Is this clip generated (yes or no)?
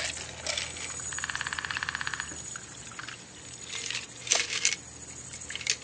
no